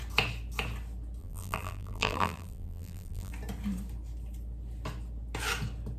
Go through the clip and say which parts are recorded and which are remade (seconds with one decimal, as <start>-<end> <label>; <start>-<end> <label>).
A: 0.0-1.2 recorded; 1.2-3.3 remade; 3.3-6.0 recorded